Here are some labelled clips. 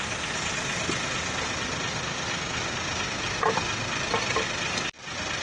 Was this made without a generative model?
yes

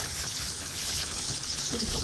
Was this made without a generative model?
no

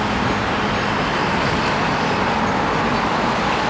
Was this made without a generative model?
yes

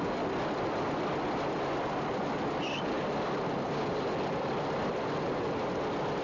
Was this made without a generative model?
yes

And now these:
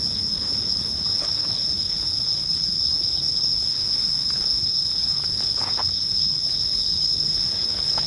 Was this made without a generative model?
no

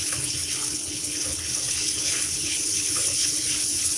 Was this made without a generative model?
no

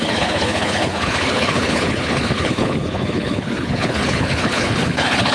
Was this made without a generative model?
no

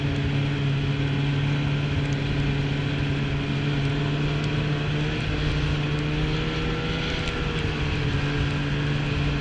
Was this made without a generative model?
yes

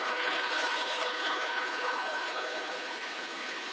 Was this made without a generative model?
no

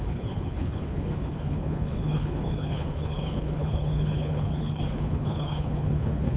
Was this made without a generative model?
no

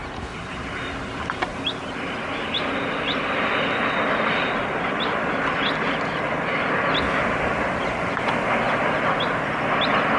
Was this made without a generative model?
yes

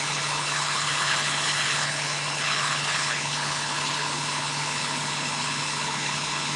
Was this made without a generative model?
no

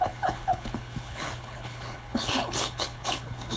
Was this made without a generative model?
no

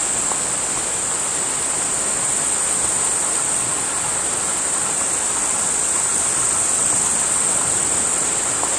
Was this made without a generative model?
yes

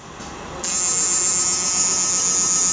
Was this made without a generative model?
yes